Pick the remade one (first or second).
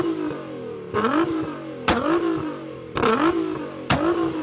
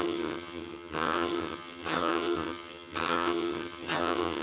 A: second